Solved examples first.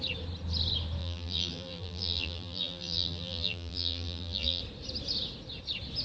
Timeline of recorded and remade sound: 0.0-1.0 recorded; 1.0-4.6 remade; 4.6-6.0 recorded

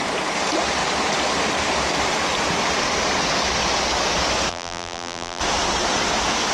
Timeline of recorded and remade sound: 0.0-4.5 recorded; 4.5-5.4 remade; 5.4-6.5 recorded

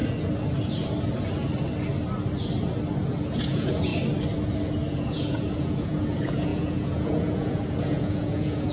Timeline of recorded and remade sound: 0.0-3.2 recorded; 3.2-3.9 remade; 3.9-4.9 recorded; 4.9-8.7 remade

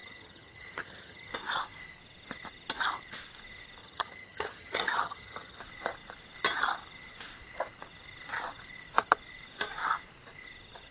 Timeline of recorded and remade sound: 0.0-1.3 remade; 1.3-3.8 recorded; 3.8-5.6 remade; 5.6-10.9 recorded

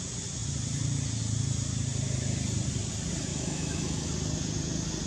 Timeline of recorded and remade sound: 0.0-3.3 recorded; 3.3-4.1 remade; 4.1-5.1 recorded

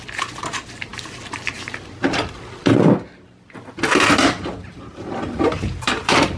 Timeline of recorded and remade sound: 0.0-4.2 recorded; 4.2-6.4 remade

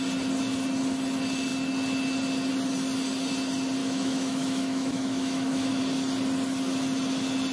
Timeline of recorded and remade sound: 0.0-3.8 recorded; 3.8-5.8 remade; 5.8-7.5 recorded

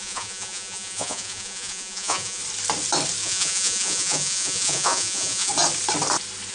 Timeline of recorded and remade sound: 0.0-2.4 remade; 2.4-3.2 recorded; 3.2-5.5 remade; 5.5-6.5 recorded